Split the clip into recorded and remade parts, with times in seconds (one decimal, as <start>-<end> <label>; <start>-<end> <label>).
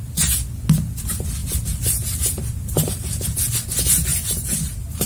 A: 0.0-1.4 recorded; 1.4-3.4 remade; 3.4-4.1 recorded; 4.1-5.1 remade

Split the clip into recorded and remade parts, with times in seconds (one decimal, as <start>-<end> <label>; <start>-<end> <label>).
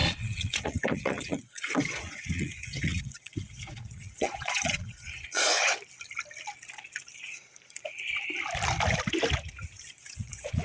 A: 0.0-5.5 remade; 5.5-9.9 recorded; 9.9-10.6 remade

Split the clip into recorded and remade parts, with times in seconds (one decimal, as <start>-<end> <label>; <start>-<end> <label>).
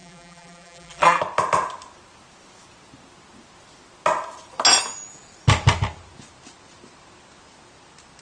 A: 0.0-1.2 remade; 1.2-8.2 recorded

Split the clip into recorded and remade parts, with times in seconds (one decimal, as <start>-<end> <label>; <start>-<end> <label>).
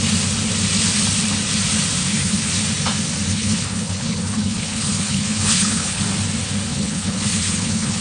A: 0.0-2.0 recorded; 2.0-2.5 remade; 2.5-3.3 recorded; 3.3-6.0 remade; 6.0-6.7 recorded; 6.7-8.0 remade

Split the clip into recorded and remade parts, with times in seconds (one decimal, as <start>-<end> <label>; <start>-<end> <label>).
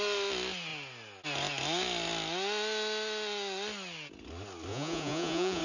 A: 0.0-4.7 recorded; 4.7-5.6 remade